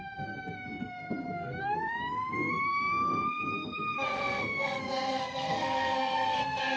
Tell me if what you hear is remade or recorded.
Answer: remade